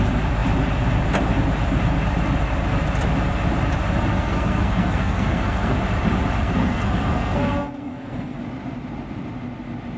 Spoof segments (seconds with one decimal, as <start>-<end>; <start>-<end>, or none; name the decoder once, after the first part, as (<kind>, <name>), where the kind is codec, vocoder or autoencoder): 4.1-5.8 (codec, SNAC); 6.4-8.4